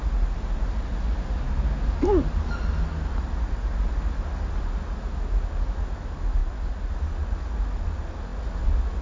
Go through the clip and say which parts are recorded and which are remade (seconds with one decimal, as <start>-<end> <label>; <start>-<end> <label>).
0.0-9.0 recorded